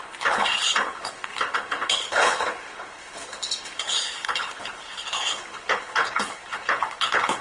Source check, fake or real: fake